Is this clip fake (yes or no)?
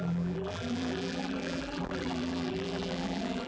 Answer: yes